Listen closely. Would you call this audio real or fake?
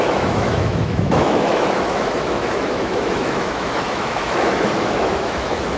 fake